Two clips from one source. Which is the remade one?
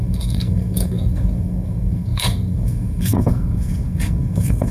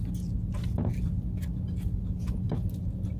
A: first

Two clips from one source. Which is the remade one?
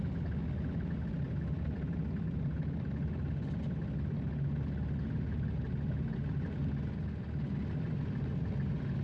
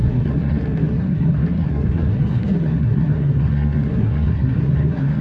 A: second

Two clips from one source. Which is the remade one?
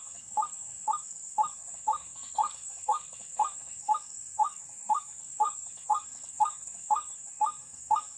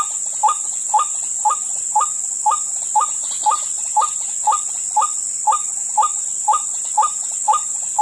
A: first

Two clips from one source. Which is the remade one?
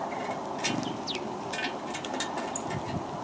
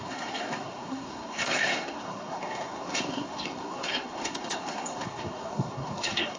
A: second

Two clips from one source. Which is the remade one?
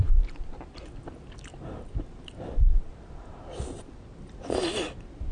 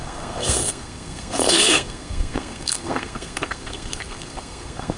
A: second